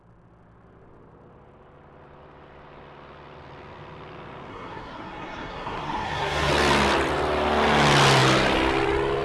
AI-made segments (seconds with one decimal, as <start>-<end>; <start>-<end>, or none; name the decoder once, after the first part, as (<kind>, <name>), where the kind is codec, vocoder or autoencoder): 4.5-6.5 (codec, SNAC)